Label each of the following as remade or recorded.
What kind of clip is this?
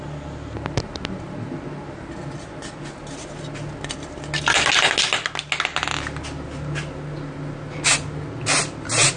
recorded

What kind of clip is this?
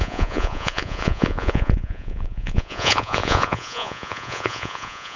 remade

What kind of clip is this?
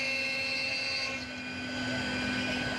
recorded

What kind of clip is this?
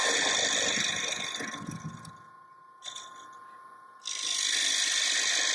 recorded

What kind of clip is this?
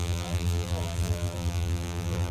remade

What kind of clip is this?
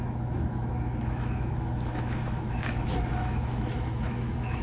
remade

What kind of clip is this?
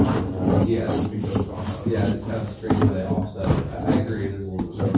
recorded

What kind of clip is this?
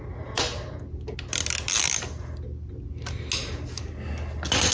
recorded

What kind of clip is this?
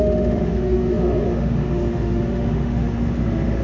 remade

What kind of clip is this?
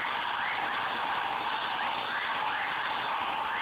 recorded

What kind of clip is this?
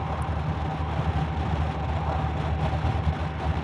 recorded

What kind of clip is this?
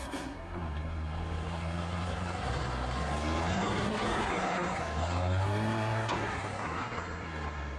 remade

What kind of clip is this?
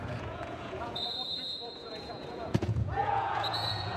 remade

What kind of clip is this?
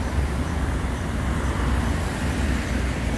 remade